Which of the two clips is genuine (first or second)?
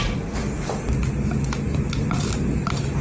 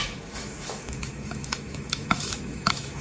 first